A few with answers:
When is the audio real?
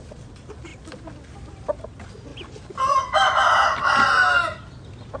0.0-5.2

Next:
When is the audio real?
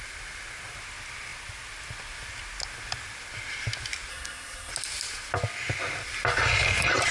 0.0-4.1; 4.7-7.1